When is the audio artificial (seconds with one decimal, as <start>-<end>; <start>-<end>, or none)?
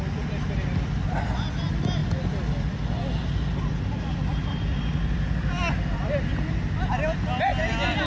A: none